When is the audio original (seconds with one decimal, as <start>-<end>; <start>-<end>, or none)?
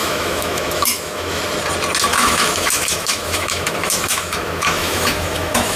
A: 1.4-2.1